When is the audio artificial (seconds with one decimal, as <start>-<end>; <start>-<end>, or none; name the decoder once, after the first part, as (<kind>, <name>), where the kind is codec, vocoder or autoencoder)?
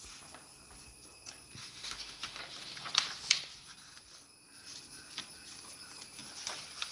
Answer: 1.6-2.4 (autoencoder, DAC-VAE)